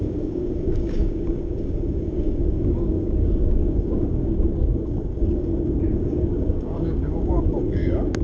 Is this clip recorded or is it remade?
remade